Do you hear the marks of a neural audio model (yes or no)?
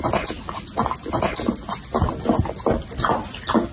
no